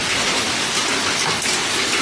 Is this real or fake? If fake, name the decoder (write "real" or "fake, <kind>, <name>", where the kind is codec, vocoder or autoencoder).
real